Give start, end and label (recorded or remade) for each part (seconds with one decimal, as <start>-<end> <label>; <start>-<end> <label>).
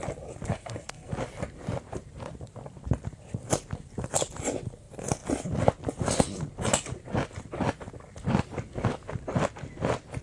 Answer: 0.0-0.5 recorded; 0.5-1.1 remade; 1.1-10.2 recorded